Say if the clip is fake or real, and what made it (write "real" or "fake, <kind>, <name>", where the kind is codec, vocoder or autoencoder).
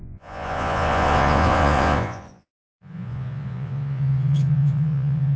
fake, vocoder, Vocos